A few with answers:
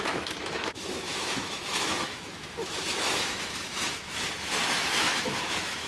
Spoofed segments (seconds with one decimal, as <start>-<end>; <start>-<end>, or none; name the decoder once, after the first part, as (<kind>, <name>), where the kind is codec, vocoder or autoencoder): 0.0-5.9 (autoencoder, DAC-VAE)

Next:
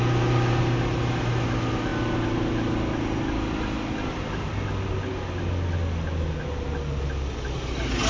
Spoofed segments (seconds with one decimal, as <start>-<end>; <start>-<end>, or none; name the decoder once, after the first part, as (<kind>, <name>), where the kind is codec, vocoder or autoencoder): none

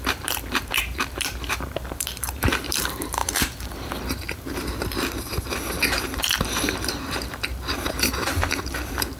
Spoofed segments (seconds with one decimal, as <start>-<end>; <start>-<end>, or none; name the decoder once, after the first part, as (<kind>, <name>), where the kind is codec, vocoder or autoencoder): 0.0-9.2 (vocoder, BigVGAN v2)

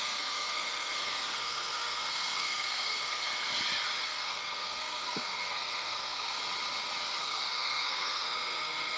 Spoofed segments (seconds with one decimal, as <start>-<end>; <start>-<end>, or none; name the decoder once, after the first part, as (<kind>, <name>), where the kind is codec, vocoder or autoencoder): 0.0-3.3 (codec, SNAC); 4.0-6.4; 7.2-9.0

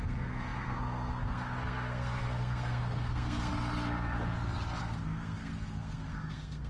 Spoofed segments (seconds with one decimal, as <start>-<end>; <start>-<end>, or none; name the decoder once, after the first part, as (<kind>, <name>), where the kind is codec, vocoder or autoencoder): 0.0-3.5 (codec, SNAC); 4.8-6.7

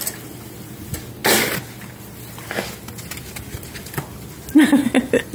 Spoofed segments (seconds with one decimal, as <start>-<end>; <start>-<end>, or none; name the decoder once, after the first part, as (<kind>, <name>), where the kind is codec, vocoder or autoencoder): none

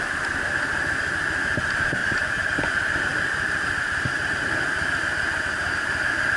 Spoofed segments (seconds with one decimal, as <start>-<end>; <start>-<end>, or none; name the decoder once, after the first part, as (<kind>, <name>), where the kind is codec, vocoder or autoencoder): 2.0-2.6 (vocoder, BigVGAN v2)

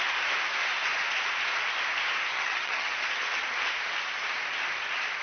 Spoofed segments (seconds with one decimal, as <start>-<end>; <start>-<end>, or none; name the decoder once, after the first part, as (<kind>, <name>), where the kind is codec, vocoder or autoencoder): 2.3-2.9 (vocoder, HiFi-GAN)